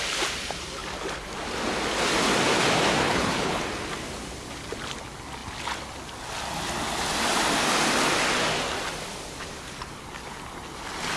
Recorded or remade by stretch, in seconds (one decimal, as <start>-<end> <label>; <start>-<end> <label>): 0.0-3.0 recorded; 3.0-3.6 remade; 3.6-11.2 recorded